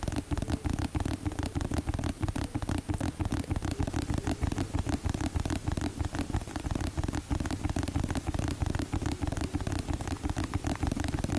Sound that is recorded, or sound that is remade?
recorded